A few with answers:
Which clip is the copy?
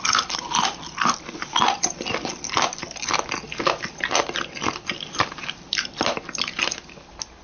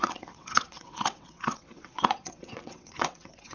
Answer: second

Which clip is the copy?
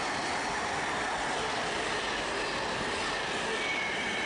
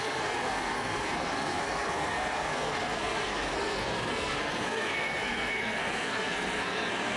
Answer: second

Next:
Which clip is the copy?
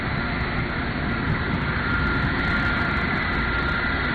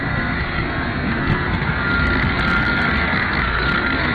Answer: second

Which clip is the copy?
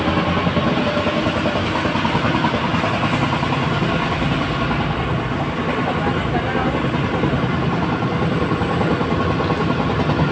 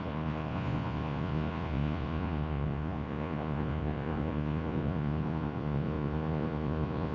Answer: second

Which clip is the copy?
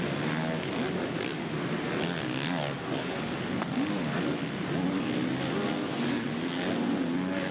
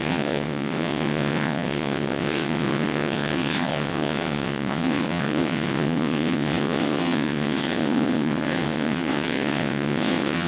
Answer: second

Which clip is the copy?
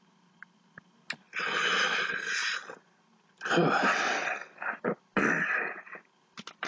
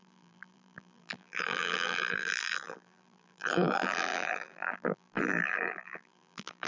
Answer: second